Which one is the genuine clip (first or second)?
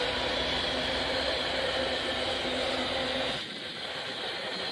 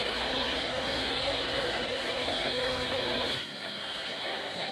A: first